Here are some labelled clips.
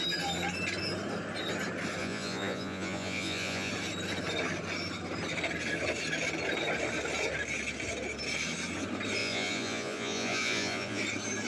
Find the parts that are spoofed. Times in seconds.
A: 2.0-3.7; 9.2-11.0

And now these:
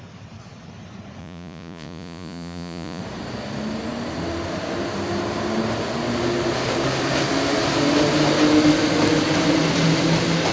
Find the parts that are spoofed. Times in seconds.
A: 1.2-3.0

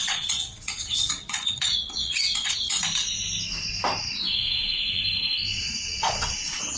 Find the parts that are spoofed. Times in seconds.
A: 0.0-2.8; 4.0-5.0; 5.6-6.8

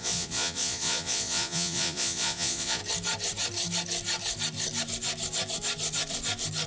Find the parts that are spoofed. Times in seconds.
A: 0.0-2.8

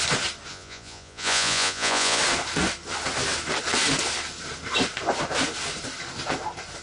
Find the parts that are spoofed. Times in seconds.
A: 0.5-2.2